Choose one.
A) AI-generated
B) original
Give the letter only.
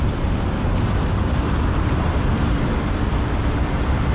A